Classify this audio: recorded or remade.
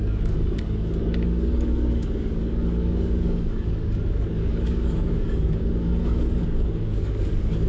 remade